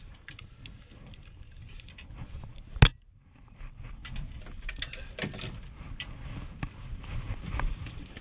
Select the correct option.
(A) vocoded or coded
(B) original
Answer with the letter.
B